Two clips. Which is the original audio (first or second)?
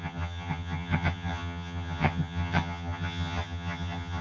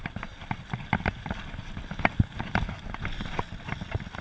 second